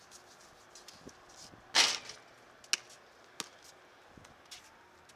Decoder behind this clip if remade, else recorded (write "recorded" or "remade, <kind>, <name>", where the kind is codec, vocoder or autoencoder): recorded